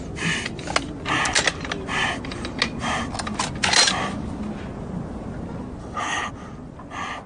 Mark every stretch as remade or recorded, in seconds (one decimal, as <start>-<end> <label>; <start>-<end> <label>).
0.0-5.8 recorded; 5.8-6.3 remade; 6.3-7.3 recorded